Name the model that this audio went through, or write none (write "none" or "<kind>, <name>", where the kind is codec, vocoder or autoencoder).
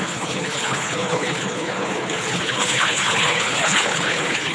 codec, HILCodec